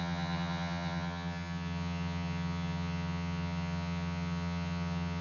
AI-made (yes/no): yes